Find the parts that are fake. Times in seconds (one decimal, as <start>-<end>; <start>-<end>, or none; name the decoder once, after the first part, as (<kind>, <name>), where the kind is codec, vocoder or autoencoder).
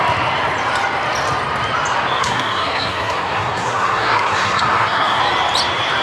2.2-5.2 (codec, SNAC)